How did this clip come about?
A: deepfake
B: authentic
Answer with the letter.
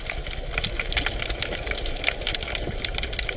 B